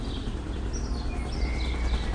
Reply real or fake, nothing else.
real